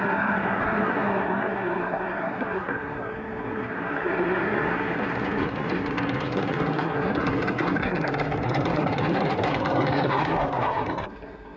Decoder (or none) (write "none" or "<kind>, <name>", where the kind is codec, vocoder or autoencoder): codec, SNAC